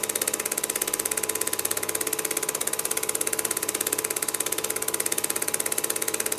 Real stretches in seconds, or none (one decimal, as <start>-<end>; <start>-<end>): 0.0-2.6